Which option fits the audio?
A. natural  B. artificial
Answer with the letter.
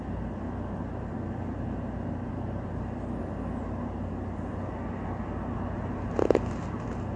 A